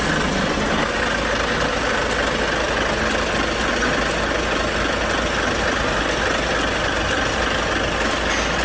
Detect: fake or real real